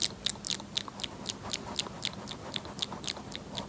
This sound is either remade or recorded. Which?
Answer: recorded